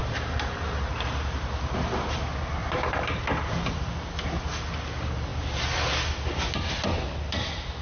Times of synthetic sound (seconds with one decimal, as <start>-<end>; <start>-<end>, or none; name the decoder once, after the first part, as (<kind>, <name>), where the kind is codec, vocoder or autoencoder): 0.0-0.9 (vocoder, BigVGAN v2); 2.6-3.2